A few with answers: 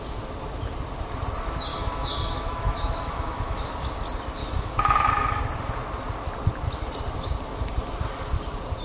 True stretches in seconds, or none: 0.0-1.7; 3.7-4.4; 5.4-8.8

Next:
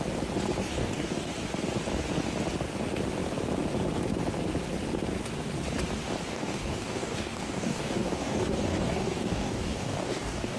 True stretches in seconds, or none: 0.0-0.6; 1.3-6.3

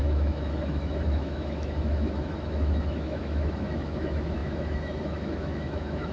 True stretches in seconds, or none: none

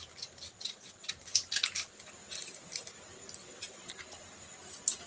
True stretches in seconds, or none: 0.0-0.5; 1.1-3.4; 3.9-5.1

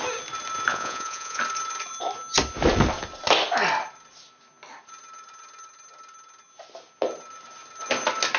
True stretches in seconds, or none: 0.0-0.7; 1.4-8.4

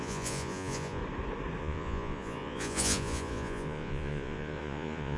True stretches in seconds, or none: 1.0-1.6

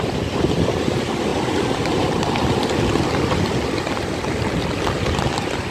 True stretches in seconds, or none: 0.0-5.7

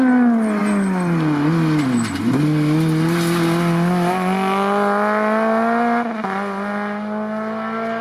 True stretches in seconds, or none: 0.0-8.0